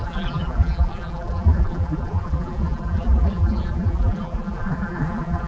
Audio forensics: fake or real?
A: fake